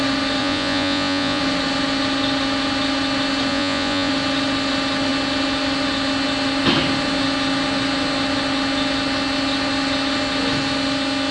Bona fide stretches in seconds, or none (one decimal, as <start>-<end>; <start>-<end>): 0.0-0.4; 1.4-3.5; 4.1-11.3